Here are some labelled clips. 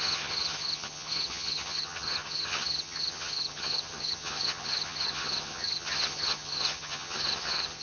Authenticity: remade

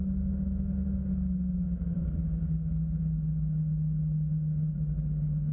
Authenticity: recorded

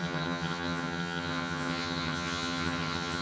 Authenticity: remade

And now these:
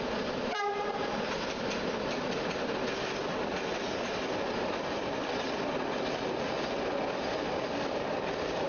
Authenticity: recorded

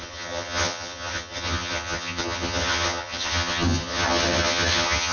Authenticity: remade